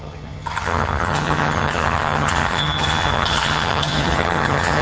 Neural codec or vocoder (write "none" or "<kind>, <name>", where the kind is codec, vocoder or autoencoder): vocoder, HiFi-GAN